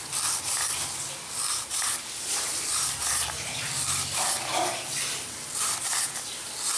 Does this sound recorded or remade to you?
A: recorded